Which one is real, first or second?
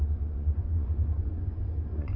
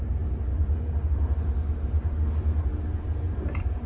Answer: second